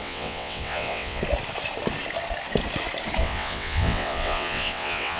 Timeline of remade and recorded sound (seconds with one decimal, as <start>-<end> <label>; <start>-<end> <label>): 0.0-1.2 remade; 1.2-3.2 recorded; 3.2-5.2 remade